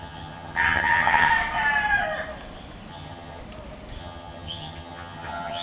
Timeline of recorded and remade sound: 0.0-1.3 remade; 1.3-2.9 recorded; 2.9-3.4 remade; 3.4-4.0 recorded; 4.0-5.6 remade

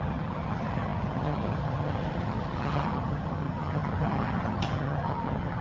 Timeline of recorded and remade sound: 0.0-5.6 remade

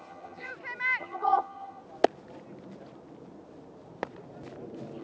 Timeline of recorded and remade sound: 0.0-0.5 remade; 0.5-1.0 recorded; 1.0-1.8 remade; 1.8-5.0 recorded